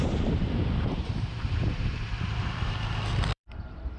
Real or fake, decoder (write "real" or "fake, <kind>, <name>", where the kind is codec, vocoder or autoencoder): fake, vocoder, BigVGAN v2